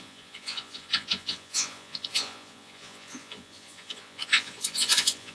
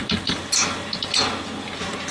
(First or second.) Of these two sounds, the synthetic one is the first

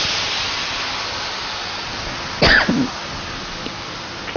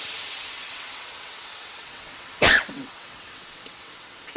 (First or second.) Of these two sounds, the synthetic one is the second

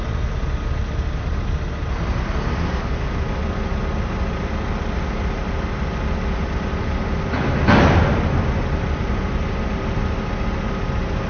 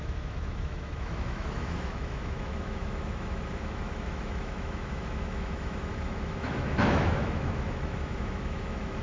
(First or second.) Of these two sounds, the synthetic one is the second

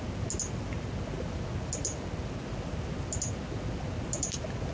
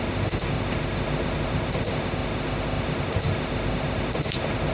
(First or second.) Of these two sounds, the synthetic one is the second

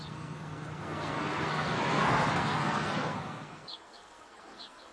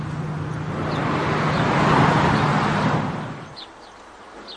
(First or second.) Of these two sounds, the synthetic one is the first